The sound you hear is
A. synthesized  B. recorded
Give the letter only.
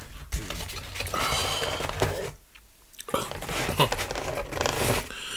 B